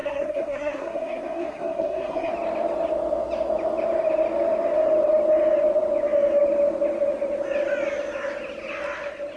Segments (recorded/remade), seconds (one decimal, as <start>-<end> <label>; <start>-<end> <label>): 0.0-2.3 remade; 2.3-9.4 recorded